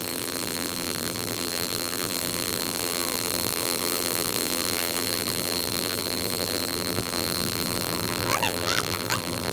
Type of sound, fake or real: fake